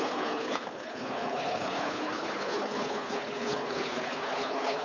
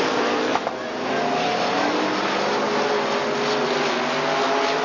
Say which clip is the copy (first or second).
first